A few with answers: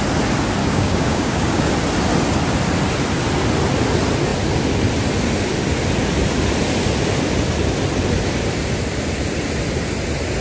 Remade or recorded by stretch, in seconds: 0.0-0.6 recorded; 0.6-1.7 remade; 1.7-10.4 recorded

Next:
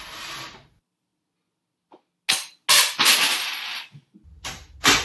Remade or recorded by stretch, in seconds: 0.0-1.1 remade; 1.1-3.2 recorded; 3.2-4.2 remade; 4.2-5.0 recorded

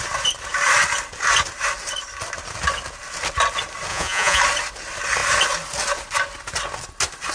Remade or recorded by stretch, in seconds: 0.0-3.9 recorded; 3.9-4.4 remade; 4.4-7.3 recorded

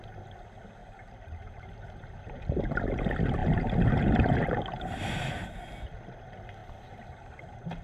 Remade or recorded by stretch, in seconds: 0.0-0.8 recorded; 0.8-2.6 remade; 2.6-3.4 recorded; 3.4-4.4 remade; 4.4-7.8 recorded

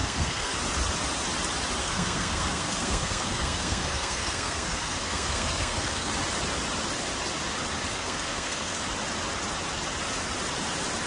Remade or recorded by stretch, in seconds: 0.0-0.5 remade; 0.5-1.8 recorded; 1.8-6.1 remade; 6.1-7.9 recorded; 7.9-8.8 remade; 8.8-11.1 recorded